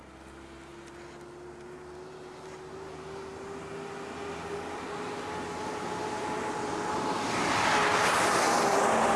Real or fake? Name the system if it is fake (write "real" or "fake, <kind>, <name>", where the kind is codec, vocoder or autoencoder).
real